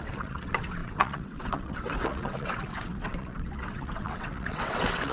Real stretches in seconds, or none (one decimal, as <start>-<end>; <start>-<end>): none